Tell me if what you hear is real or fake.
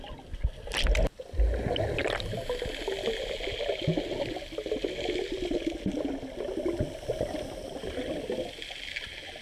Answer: real